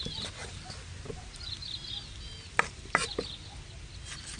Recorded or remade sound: recorded